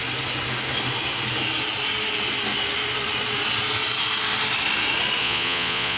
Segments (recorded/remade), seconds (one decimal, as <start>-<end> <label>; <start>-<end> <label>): 0.0-5.2 recorded; 5.2-6.0 remade

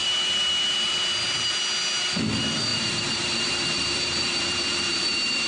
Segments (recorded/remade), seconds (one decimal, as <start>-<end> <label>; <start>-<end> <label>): 0.0-1.6 remade; 1.6-2.7 recorded; 2.7-5.5 remade

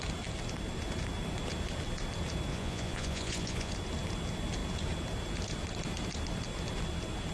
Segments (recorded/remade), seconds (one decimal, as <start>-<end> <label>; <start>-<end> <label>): 0.0-2.5 recorded; 2.5-3.7 remade; 3.7-7.3 recorded

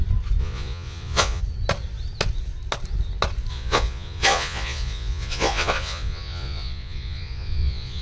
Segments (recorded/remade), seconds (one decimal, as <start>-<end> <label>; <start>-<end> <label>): 0.0-0.4 recorded; 0.4-1.4 remade; 1.4-3.5 recorded; 3.5-8.0 remade

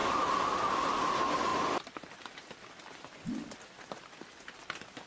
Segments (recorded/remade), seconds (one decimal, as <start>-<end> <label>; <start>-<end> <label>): 0.0-5.1 recorded

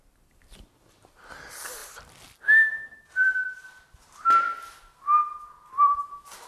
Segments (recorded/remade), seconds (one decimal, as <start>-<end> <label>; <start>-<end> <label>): 0.0-1.8 remade; 1.8-5.7 recorded; 5.7-6.5 remade